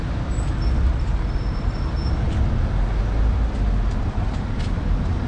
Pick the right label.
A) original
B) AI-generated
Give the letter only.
A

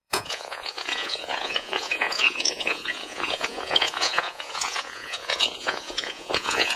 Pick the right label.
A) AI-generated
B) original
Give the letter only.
A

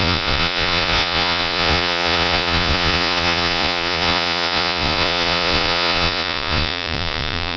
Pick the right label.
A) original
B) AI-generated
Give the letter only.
B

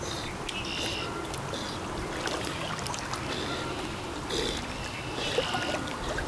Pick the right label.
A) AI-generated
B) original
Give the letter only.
B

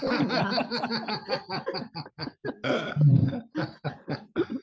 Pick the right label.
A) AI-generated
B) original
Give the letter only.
B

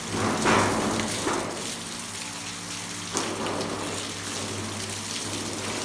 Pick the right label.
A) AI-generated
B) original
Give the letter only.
B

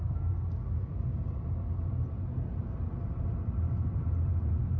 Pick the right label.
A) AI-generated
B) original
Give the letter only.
B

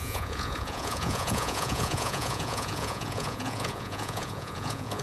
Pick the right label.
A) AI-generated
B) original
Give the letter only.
A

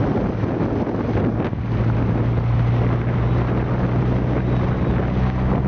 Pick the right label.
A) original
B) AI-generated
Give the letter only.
A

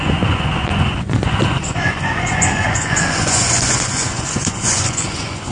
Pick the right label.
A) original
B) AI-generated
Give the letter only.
B